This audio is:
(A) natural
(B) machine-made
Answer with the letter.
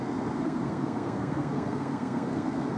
B